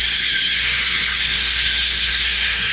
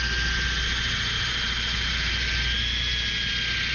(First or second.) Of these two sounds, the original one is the second